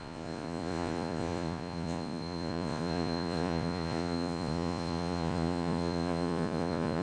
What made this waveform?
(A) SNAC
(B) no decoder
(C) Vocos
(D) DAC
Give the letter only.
C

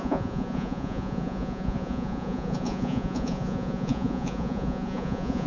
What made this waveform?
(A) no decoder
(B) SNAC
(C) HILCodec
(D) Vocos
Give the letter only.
D